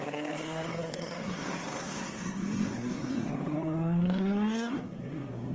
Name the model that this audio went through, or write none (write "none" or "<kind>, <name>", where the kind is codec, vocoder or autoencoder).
codec, SNAC